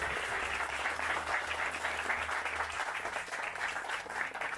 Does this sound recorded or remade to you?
recorded